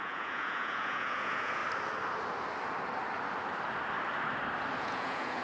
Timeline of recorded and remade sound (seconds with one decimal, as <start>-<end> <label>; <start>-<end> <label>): 0.0-1.6 remade; 1.6-4.8 recorded; 4.8-5.4 remade

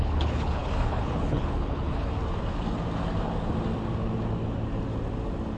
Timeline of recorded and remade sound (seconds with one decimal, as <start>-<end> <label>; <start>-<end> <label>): 0.0-2.1 remade; 2.1-5.6 recorded

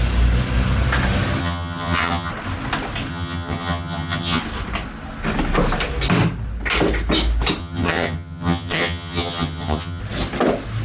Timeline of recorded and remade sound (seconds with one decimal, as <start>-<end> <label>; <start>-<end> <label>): 0.0-1.4 recorded; 1.4-2.3 remade; 2.3-3.1 recorded; 3.1-4.4 remade; 4.4-7.6 recorded; 7.6-10.0 remade; 10.0-10.8 recorded

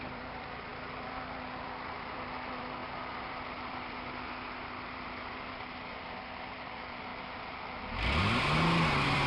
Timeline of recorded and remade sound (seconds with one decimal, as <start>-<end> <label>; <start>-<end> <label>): 0.0-7.1 remade; 7.1-8.2 recorded; 8.2-9.3 remade